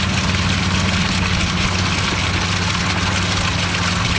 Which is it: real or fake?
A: real